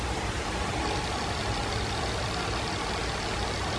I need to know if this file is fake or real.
real